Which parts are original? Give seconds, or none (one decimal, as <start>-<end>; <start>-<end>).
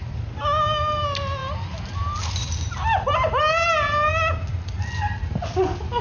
0.0-6.0